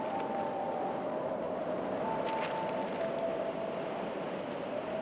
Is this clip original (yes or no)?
yes